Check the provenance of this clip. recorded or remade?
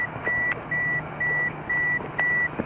recorded